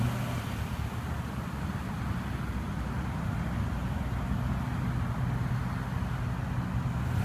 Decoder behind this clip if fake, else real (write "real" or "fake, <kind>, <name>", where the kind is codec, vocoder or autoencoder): real